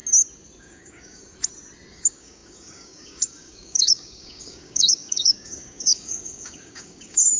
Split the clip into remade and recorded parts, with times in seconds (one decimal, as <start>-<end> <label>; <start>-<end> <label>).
0.0-0.6 recorded; 0.6-1.2 remade; 1.2-1.9 recorded; 1.9-7.4 remade